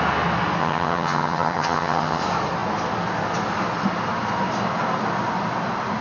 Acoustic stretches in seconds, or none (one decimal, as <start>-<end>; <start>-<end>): 0.0-0.6; 2.2-6.0